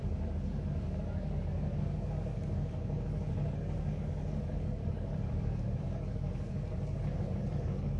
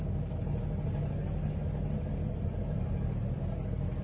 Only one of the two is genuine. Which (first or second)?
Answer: second